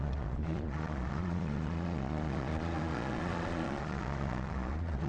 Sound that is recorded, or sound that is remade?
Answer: remade